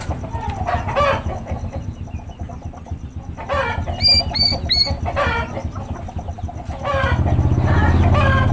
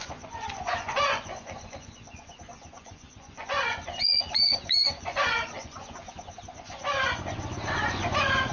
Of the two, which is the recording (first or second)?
first